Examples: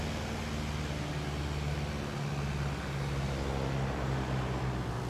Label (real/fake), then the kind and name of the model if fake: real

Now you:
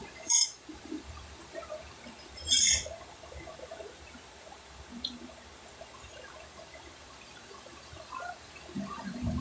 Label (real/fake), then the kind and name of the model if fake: fake, vocoder, BigVGAN v2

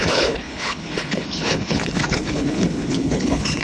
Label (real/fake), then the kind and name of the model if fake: fake, codec, HILCodec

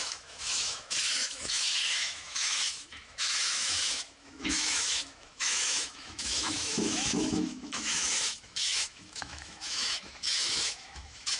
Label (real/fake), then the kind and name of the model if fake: fake, autoencoder, DAC-VAE